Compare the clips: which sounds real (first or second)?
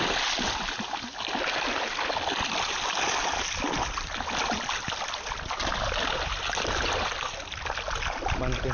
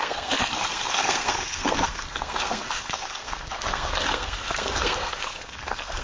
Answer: first